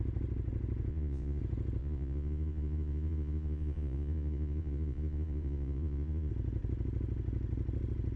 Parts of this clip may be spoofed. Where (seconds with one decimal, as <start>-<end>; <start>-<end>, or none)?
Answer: 0.9-1.4; 1.8-6.3